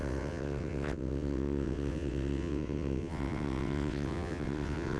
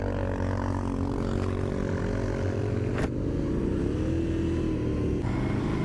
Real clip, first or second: second